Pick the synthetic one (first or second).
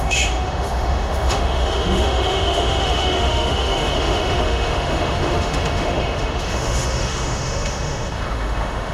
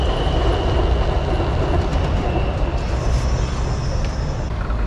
first